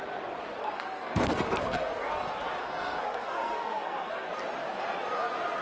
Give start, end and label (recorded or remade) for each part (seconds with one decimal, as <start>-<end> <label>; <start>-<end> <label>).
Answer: 0.0-0.6 recorded; 0.6-2.1 remade; 2.1-2.6 recorded; 2.6-4.3 remade; 4.3-5.6 recorded

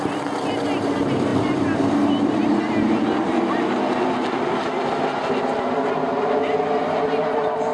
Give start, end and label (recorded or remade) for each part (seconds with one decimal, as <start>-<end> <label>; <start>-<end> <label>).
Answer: 0.0-7.7 recorded

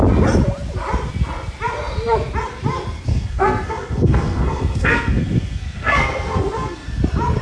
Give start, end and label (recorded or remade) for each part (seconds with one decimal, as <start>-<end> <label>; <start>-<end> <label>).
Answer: 0.0-3.1 recorded; 3.1-7.0 remade; 7.0-7.4 recorded

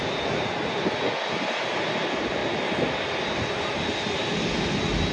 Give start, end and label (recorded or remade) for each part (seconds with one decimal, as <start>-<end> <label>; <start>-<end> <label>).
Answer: 0.0-5.1 recorded